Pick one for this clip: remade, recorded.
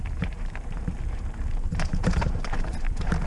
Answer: remade